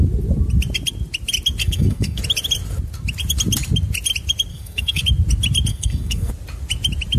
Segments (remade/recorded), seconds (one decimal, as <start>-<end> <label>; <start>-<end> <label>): 0.0-1.6 recorded; 1.6-2.2 remade; 2.2-4.5 recorded; 4.5-5.0 remade; 5.0-5.7 recorded; 5.7-6.3 remade; 6.3-7.2 recorded